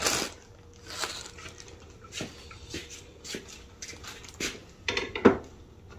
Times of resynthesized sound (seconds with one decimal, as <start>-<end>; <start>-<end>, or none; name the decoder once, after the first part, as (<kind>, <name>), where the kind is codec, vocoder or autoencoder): none